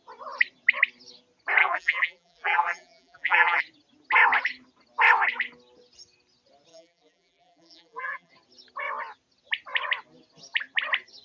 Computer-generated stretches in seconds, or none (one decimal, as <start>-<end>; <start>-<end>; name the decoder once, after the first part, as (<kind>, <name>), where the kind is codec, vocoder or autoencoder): 1.6-3.6 (vocoder, BigVGAN v2); 6.7-8.3